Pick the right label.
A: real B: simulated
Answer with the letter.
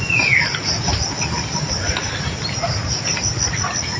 A